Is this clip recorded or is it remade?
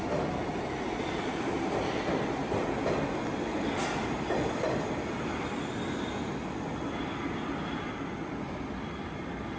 recorded